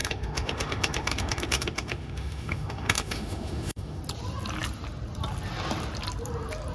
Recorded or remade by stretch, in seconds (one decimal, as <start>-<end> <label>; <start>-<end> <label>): 0.0-4.0 remade; 4.0-6.7 recorded